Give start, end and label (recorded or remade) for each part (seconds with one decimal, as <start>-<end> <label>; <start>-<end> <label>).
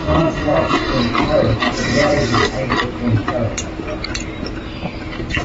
0.0-1.0 remade; 1.0-5.4 recorded